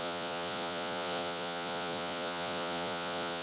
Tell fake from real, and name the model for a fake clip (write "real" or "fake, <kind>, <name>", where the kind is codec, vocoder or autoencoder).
fake, vocoder, Vocos